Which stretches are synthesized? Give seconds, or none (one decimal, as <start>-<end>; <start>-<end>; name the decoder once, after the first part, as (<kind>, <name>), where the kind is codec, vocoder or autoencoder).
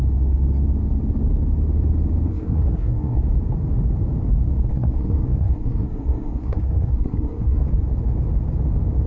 2.3-3.2 (codec, SNAC); 4.7-7.6